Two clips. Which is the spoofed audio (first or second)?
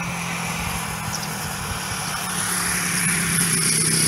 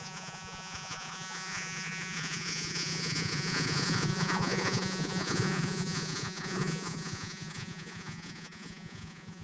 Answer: second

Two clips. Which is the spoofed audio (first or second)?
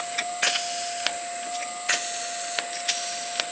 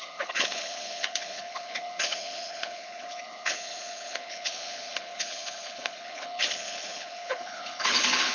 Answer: second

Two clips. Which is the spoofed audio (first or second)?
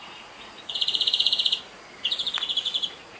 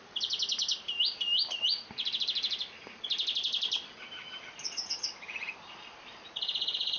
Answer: first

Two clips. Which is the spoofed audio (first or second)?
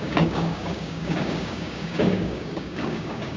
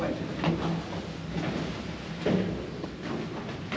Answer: first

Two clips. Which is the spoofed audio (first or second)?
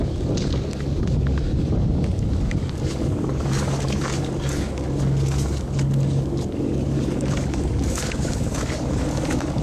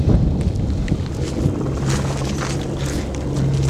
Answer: first